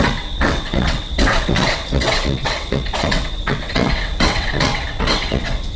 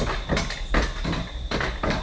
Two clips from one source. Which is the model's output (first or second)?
first